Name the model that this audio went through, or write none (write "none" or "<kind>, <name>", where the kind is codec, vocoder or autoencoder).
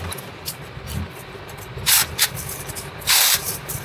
vocoder, BigVGAN v2